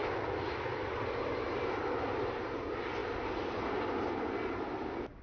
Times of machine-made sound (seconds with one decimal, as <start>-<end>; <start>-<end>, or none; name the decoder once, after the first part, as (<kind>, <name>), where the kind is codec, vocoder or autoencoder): none